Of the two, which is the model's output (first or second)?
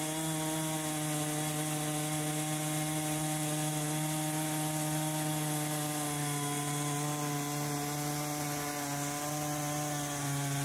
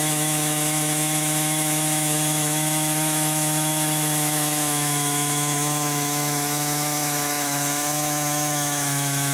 second